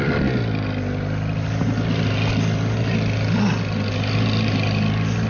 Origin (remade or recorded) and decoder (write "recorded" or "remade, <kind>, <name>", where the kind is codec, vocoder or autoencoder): recorded